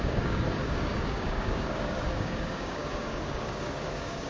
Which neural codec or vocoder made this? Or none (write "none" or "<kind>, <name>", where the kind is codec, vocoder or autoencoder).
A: codec, DAC